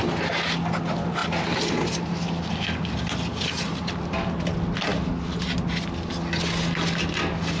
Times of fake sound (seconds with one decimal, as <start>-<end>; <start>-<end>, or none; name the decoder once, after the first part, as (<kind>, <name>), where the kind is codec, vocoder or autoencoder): none